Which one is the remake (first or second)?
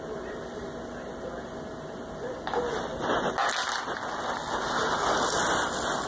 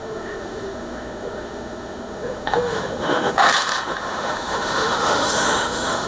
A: second